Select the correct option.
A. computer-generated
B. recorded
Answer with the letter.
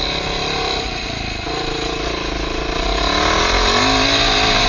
B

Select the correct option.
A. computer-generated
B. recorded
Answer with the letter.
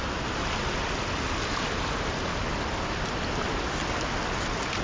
B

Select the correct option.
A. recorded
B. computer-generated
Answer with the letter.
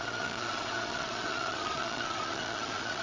B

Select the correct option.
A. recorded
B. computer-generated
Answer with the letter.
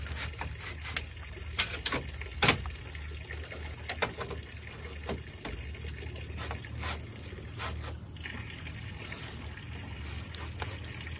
A